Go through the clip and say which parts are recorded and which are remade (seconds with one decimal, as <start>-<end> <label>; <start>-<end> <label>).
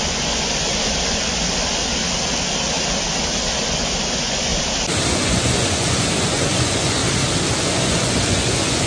0.0-1.9 remade; 1.9-3.6 recorded; 3.6-4.5 remade; 4.5-5.1 recorded; 5.1-7.0 remade; 7.0-7.6 recorded; 7.6-8.9 remade